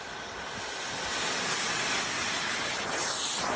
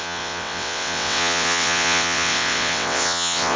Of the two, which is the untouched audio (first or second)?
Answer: first